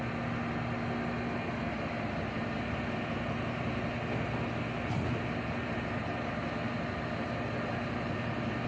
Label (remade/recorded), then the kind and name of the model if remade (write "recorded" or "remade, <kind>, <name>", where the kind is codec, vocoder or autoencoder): recorded